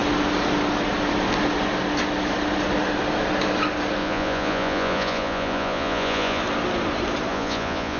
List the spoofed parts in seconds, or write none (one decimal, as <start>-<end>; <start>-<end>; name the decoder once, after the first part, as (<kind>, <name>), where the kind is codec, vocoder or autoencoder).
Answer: 4.0-6.4 (vocoder, Vocos); 7.3-8.0